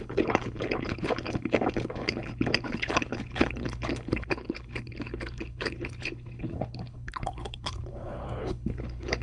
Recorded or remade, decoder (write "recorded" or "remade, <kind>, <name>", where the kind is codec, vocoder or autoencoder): remade, codec, HILCodec